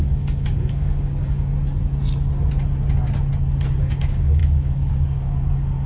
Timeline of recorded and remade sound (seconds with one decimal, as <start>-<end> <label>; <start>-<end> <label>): 0.0-1.5 remade; 1.5-3.8 recorded; 3.8-5.9 remade